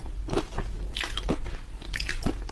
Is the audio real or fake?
real